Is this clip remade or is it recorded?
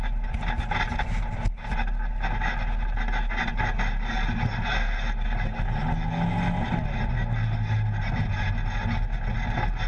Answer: recorded